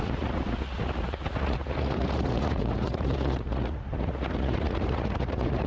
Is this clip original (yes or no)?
no